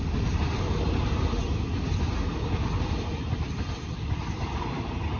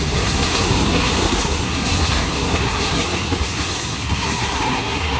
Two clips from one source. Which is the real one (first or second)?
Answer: first